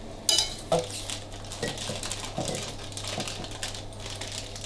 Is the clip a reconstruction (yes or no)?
no